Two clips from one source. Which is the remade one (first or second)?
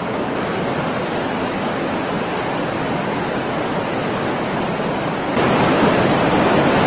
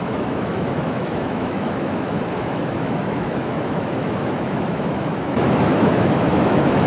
second